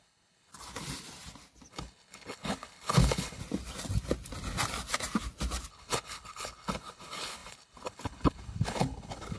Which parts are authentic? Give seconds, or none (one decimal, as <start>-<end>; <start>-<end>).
0.5-1.7; 3.4-5.7